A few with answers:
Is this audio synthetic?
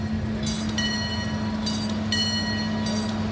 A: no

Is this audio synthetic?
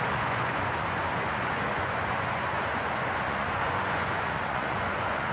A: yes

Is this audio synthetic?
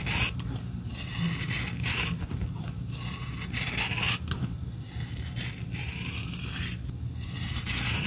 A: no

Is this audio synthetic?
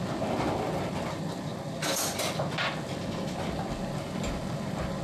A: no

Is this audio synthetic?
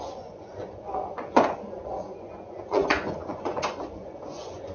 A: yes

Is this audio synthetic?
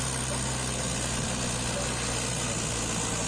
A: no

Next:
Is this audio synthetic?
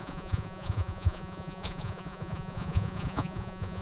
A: yes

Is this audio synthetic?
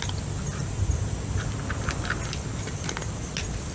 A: no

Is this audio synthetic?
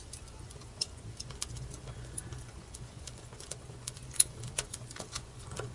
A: yes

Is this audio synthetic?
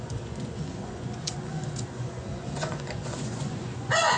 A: yes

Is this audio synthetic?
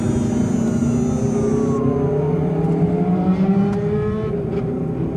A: no